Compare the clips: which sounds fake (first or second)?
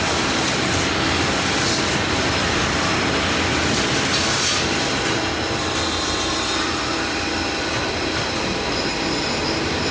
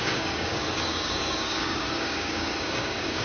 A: second